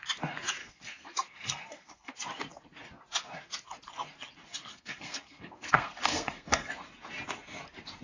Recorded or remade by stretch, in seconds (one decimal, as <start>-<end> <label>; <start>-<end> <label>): 0.0-0.6 recorded; 0.6-2.1 remade; 2.1-4.7 recorded; 4.7-6.7 remade; 6.7-8.0 recorded